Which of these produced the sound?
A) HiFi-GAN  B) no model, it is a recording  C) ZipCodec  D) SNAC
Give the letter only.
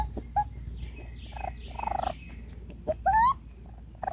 B